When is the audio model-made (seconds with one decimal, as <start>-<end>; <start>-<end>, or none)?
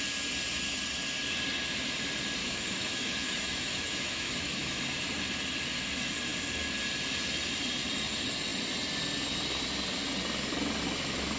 2.4-4.8